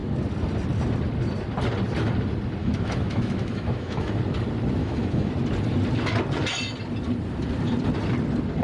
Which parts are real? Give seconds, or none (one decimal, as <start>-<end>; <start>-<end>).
0.0-2.6; 4.1-4.8; 5.3-8.6